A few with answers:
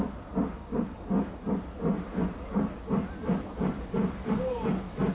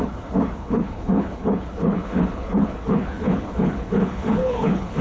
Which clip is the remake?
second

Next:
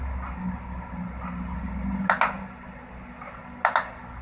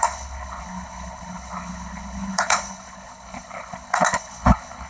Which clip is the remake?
second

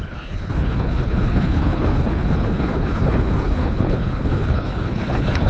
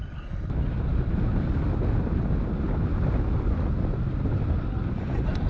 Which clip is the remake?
first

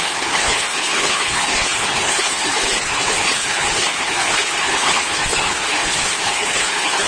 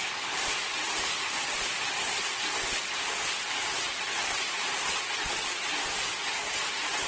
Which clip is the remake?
first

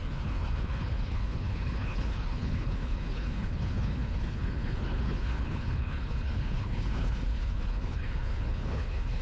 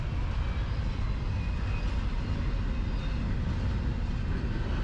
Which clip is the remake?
first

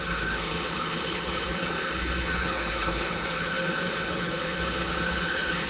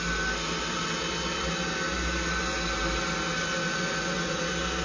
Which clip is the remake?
first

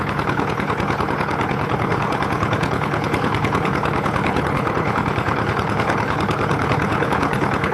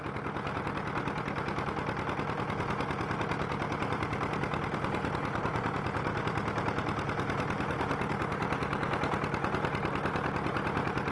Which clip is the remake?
first